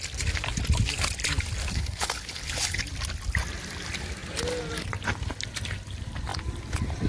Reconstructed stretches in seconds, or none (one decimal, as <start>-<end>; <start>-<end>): 1.6-2.8